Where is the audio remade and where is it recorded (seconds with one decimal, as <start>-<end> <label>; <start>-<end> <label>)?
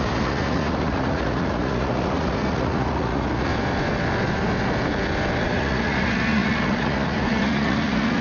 0.0-3.5 remade; 3.5-5.4 recorded; 5.4-8.2 remade